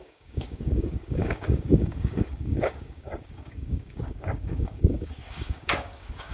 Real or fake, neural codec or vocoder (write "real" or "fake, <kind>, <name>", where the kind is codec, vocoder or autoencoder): fake, codec, DAC